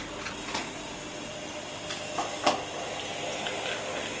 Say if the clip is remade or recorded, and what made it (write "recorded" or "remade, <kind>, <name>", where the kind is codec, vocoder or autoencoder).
recorded